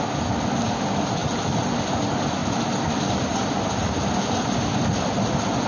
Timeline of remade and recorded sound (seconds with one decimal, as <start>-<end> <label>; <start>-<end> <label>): 0.0-1.2 recorded; 1.2-1.8 remade; 1.8-5.7 recorded